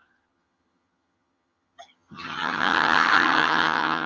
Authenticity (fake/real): fake